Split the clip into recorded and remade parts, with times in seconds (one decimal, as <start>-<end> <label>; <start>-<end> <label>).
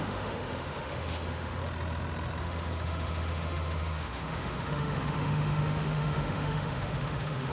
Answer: 0.0-1.6 remade; 1.6-2.4 recorded; 2.4-7.5 remade